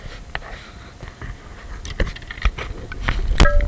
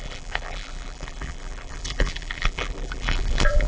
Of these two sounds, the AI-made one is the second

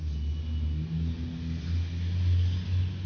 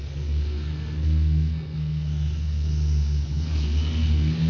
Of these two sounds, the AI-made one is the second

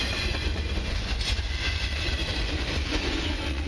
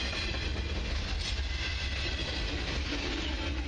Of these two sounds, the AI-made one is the first